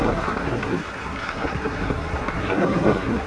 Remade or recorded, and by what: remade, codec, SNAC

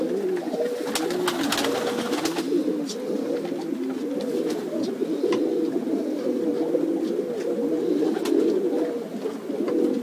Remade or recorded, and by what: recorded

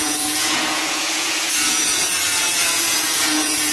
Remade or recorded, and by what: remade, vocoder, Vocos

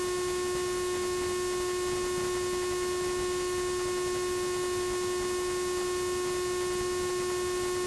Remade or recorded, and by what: recorded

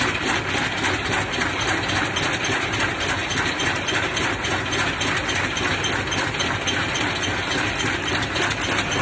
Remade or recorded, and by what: recorded